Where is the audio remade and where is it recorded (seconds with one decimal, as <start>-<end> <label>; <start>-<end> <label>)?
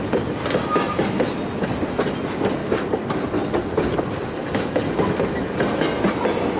0.0-6.6 recorded